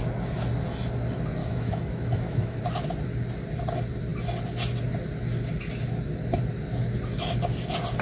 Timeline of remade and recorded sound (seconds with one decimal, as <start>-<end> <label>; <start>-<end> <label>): 0.0-1.4 recorded; 1.4-2.6 remade; 2.6-8.0 recorded